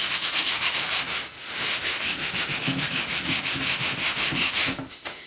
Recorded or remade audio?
remade